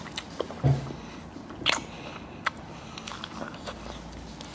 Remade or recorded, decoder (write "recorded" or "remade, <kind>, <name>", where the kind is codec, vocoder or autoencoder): recorded